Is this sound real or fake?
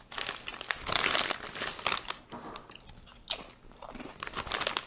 real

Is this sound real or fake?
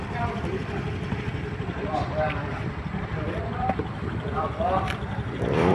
fake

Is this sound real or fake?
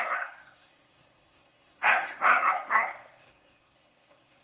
fake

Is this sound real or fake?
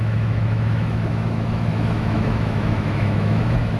fake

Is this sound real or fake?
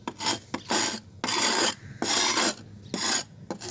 real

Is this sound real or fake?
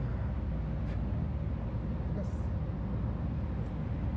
real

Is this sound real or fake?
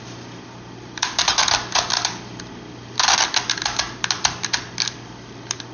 real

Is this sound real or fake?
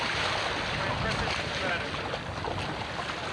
real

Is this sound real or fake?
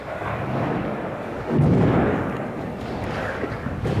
fake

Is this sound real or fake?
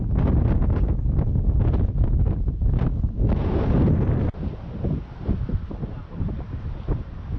real